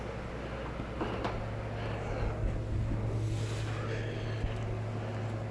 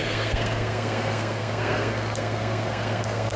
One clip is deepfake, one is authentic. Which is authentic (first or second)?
first